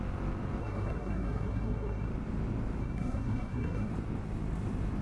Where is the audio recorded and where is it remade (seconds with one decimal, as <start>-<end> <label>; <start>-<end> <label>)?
0.0-0.6 recorded; 0.6-2.1 remade; 2.1-2.8 recorded; 2.8-3.9 remade; 3.9-5.0 recorded